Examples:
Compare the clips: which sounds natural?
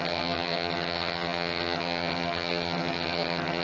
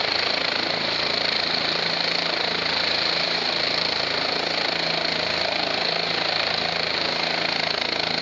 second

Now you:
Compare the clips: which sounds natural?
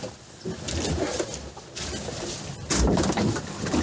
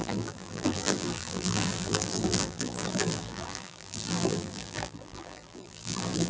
first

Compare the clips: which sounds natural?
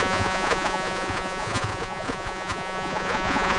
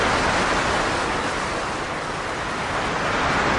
second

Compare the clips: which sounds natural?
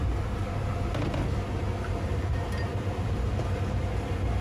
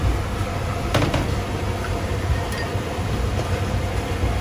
first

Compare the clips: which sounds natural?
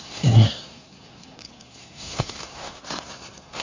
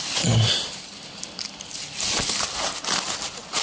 second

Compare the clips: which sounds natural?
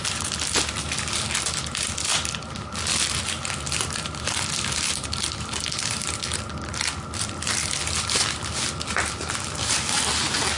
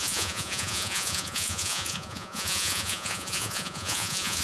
first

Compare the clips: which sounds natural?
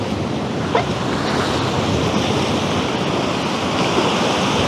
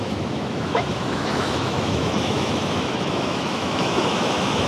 first